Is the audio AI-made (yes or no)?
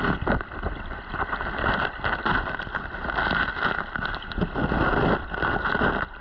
no